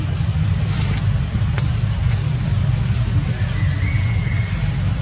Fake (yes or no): no